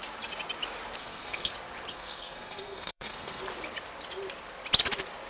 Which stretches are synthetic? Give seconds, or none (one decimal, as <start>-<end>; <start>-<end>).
1.0-1.5; 1.9-3.4